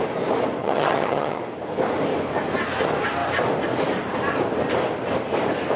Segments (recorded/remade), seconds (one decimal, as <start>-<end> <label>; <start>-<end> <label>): 0.0-0.6 recorded; 0.6-1.4 remade; 1.4-5.8 recorded